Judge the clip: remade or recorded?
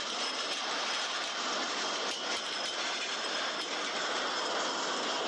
recorded